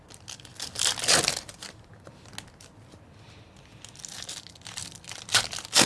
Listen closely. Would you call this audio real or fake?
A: real